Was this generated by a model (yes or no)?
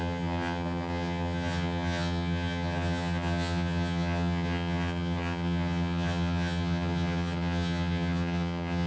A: yes